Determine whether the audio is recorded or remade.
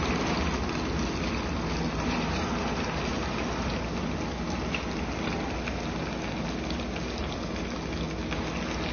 recorded